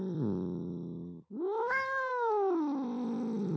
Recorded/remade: remade